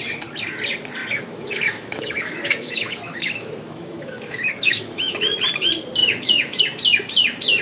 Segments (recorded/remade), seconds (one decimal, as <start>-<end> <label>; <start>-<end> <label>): 0.0-1.0 recorded; 1.0-5.4 remade; 5.4-6.0 recorded; 6.0-6.6 remade; 6.6-7.6 recorded

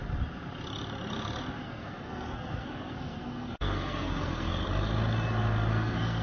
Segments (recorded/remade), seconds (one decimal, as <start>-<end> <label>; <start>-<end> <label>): 0.0-1.6 recorded; 1.6-4.6 remade; 4.6-5.7 recorded; 5.7-6.2 remade

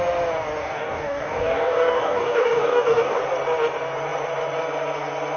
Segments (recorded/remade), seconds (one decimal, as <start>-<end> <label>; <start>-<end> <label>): 0.0-0.6 recorded; 0.6-3.2 remade; 3.2-5.4 recorded

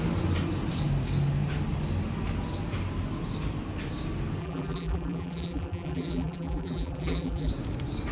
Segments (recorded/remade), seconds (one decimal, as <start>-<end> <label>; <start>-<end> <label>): 0.0-4.4 recorded; 4.4-7.5 remade; 7.5-8.1 recorded

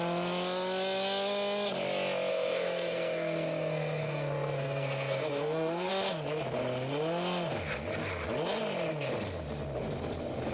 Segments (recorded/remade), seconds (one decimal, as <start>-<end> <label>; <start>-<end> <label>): 0.0-2.3 recorded; 2.3-5.9 remade; 5.9-10.5 recorded

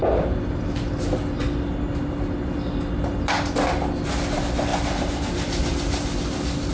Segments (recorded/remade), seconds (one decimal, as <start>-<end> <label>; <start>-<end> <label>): 0.0-6.7 recorded

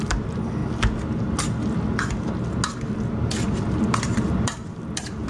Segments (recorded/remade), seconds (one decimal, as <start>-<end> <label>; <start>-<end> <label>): 0.0-0.6 remade; 0.6-3.8 recorded; 3.8-5.3 remade

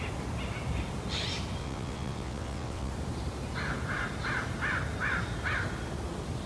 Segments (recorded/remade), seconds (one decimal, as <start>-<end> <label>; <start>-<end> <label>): 0.0-1.6 recorded; 1.6-2.9 remade; 2.9-6.5 recorded